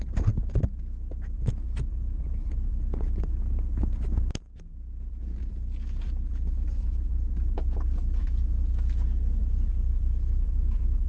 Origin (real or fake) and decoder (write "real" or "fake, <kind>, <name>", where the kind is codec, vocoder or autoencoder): real